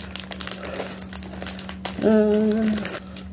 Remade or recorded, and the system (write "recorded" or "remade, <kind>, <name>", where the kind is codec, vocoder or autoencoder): recorded